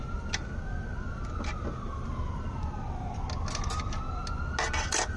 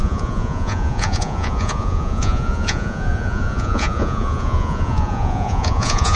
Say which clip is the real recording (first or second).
first